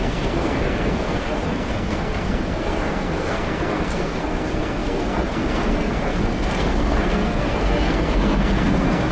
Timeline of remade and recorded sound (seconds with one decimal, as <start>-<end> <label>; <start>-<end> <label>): 0.0-9.1 remade